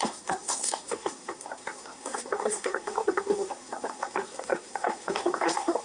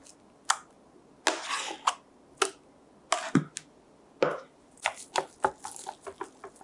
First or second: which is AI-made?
first